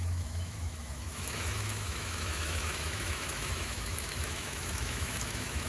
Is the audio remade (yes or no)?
yes